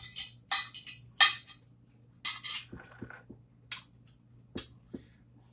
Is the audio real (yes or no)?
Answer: yes